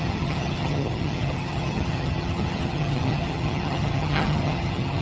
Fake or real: fake